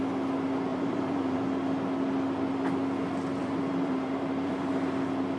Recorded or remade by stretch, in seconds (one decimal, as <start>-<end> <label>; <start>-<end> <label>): 0.0-0.7 recorded; 0.7-1.4 remade; 1.4-3.4 recorded; 3.4-4.7 remade; 4.7-5.4 recorded